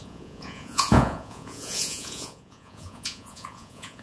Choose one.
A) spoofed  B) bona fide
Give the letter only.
A